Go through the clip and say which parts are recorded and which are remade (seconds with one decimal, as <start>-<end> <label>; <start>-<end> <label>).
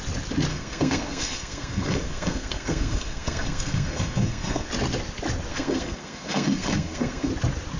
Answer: 0.0-0.5 recorded; 0.5-4.7 remade; 4.7-5.5 recorded; 5.5-7.3 remade; 7.3-7.8 recorded